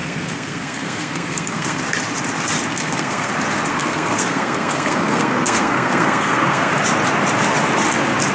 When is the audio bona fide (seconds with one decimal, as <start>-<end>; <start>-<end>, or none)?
1.8-2.7; 3.3-3.7; 6.7-8.3